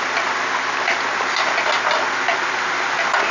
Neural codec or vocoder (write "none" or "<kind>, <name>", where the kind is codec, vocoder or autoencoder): none